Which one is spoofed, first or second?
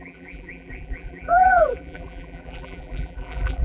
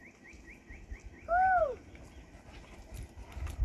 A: first